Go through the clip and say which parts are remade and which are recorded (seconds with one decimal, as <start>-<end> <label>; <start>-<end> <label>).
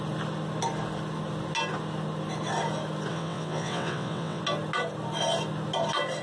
0.0-3.1 recorded; 3.1-4.4 remade; 4.4-6.2 recorded